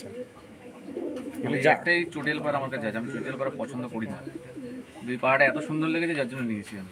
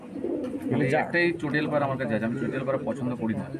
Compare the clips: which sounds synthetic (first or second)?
first